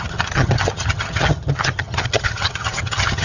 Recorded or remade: remade